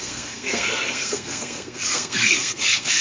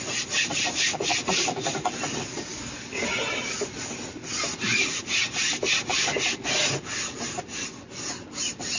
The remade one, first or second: first